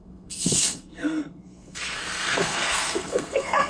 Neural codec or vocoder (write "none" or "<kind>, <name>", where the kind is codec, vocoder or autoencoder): codec, SNAC